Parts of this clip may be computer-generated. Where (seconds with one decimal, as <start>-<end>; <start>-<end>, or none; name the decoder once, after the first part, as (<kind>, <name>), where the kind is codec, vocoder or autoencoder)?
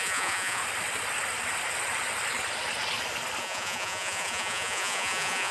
0.0-0.6 (vocoder, Vocos); 3.4-5.5